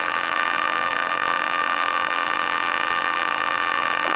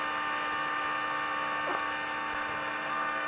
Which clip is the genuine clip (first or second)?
second